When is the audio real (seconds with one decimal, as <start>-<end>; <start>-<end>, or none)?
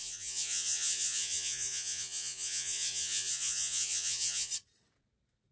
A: 4.5-5.5